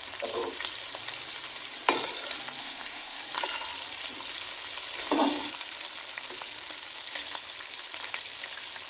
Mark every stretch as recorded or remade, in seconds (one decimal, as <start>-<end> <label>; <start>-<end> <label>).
0.0-2.6 recorded; 2.6-3.2 remade; 3.2-8.9 recorded